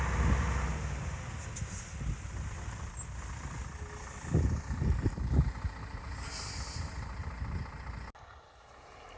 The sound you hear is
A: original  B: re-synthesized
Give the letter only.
A